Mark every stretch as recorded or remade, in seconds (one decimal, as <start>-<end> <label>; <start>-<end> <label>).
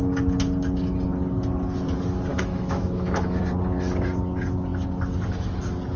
0.0-2.3 recorded; 2.3-3.4 remade; 3.4-6.0 recorded